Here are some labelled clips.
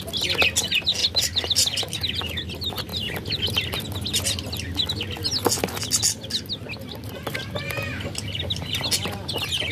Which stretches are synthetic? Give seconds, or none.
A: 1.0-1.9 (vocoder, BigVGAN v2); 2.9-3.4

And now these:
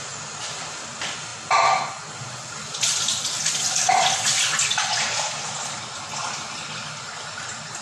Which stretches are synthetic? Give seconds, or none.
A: 1.3-1.9 (vocoder, BigVGAN v2)

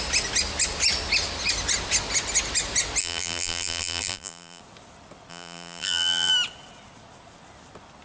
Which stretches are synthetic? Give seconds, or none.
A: 3.0-4.6 (vocoder, BigVGAN v2); 5.3-6.3

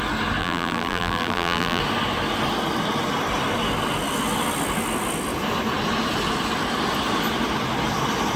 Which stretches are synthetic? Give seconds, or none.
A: 0.4-1.8 (vocoder, BigVGAN v2)

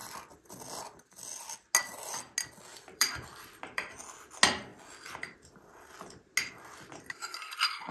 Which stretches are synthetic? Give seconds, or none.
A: 2.7-3.9 (vocoder, BigVGAN v2)

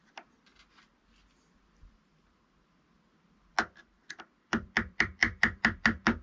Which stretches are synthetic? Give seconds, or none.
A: 0.0-0.5 (vocoder, BigVGAN v2); 4.2-6.2

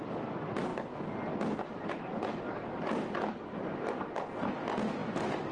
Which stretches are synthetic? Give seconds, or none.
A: 5.0-5.5 (vocoder, BigVGAN v2)